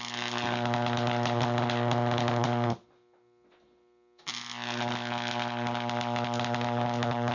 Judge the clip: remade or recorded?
recorded